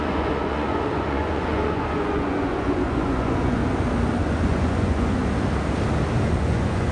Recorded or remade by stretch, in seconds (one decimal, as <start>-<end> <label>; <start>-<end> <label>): 0.0-3.6 remade; 3.6-4.2 recorded; 4.2-5.2 remade; 5.2-6.3 recorded; 6.3-6.9 remade